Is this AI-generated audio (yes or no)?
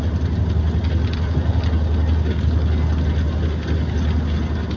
no